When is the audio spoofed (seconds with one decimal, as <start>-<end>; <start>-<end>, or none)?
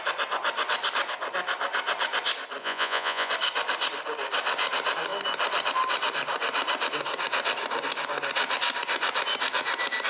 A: 2.6-3.3